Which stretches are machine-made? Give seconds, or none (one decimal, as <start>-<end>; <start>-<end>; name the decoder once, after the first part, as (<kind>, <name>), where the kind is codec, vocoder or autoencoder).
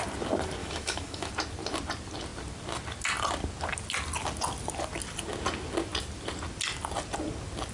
0.6-1.3 (autoencoder, DAC-VAE)